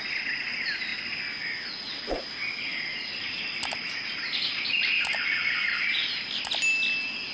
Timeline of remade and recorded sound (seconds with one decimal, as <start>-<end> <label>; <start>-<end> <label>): 0.0-7.3 recorded